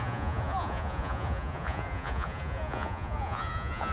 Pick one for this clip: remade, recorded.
remade